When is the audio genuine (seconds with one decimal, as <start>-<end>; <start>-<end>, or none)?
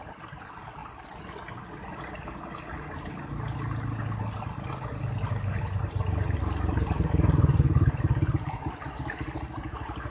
0.0-10.1